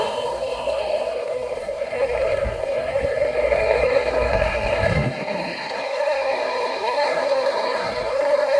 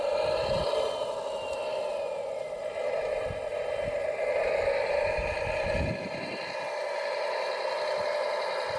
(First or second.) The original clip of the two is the second